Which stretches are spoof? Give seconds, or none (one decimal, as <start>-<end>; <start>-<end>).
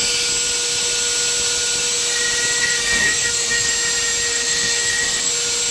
2.6-3.7; 4.3-5.3